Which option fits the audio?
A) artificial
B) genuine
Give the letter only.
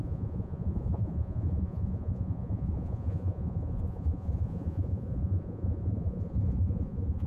A